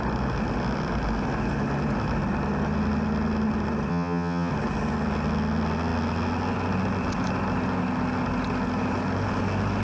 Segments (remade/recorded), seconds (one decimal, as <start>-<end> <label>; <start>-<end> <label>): 0.0-3.9 recorded; 3.9-4.5 remade; 4.5-9.8 recorded